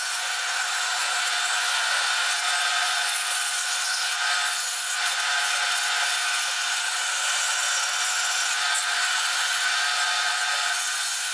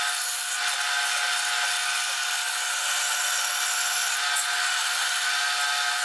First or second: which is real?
second